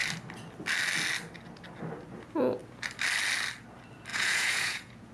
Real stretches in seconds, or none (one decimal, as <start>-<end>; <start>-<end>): 0.0-4.1